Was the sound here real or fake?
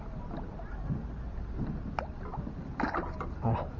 real